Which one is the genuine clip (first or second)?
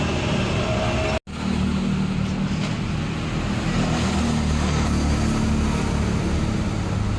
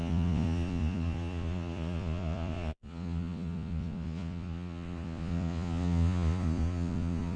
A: first